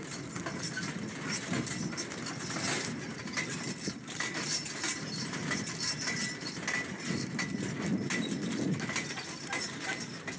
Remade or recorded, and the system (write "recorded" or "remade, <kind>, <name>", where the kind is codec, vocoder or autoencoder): recorded